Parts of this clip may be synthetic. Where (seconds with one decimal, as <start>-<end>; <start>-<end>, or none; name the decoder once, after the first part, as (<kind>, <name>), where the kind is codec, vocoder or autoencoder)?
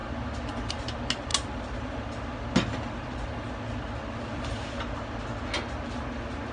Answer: none